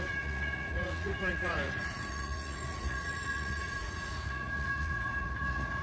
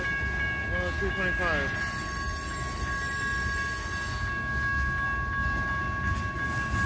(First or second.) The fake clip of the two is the first